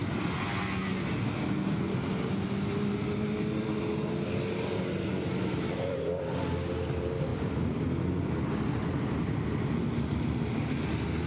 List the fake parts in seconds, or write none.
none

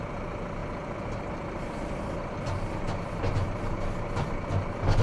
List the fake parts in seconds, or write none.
0.6-3.6 (vocoder, BigVGAN v2)

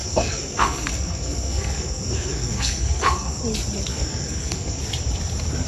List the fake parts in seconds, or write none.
0.0-3.4 (codec, SNAC); 3.9-4.8

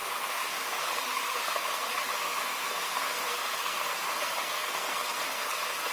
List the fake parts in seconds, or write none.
0.0-5.9 (codec, SNAC)

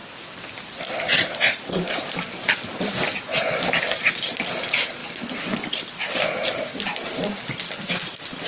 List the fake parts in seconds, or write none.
none

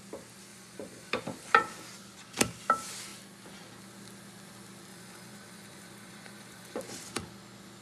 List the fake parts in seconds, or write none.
0.5-1.1 (vocoder, Vocos); 4.9-6.8

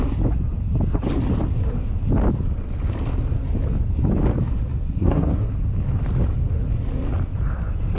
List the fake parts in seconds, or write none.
4.7-5.5 (codec, SNAC)